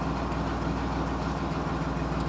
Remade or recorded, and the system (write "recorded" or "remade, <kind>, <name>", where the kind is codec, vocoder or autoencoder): recorded